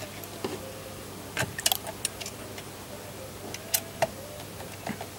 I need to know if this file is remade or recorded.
recorded